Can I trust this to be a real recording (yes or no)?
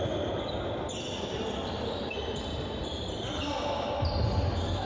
yes